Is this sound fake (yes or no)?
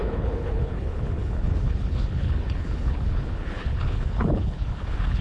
yes